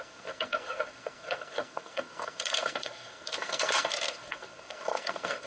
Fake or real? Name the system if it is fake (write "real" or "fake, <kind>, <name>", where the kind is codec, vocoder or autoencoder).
fake, codec, SNAC